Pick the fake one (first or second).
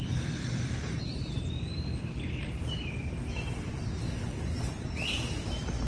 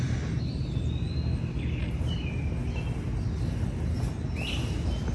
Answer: first